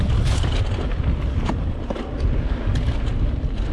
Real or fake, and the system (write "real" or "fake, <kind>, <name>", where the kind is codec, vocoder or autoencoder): real